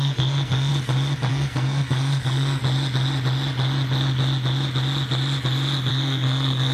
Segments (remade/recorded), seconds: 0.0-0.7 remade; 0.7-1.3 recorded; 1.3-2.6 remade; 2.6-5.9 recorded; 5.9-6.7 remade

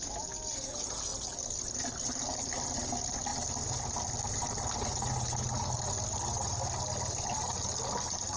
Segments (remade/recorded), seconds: 0.0-8.4 recorded